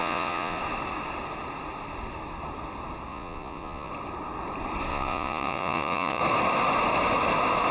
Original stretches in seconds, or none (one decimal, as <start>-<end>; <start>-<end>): 0.6-3.1; 3.9-4.9; 6.2-7.7

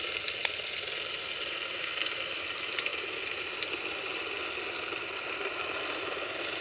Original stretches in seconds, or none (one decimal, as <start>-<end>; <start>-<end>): 0.0-6.6